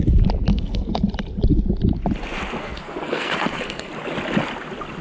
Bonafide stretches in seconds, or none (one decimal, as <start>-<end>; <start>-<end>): 0.0-0.5; 1.0-2.6; 3.9-5.0